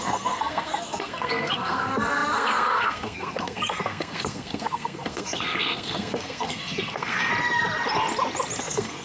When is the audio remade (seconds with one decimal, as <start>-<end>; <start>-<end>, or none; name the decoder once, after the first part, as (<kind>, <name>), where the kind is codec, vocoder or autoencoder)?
0.0-7.3 (codec, SNAC); 8.6-9.0